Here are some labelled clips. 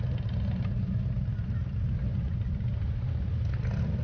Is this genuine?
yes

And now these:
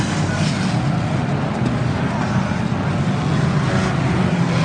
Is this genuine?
yes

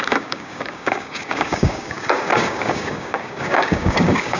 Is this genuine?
no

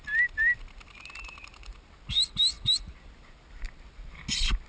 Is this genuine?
yes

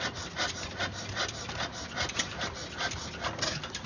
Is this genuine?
yes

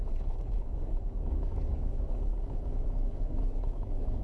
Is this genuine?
no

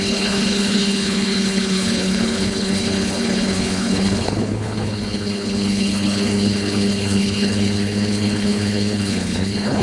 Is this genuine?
no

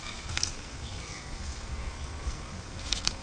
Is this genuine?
no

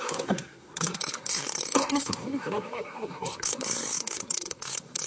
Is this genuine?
no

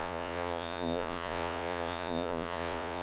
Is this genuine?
no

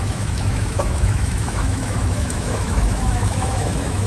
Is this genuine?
no